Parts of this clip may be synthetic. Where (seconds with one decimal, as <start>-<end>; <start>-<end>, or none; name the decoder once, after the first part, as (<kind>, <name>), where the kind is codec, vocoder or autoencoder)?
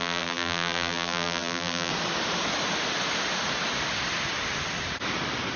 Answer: 0.0-1.9 (vocoder, BigVGAN v2)